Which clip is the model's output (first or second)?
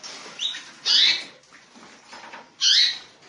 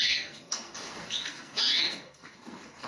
second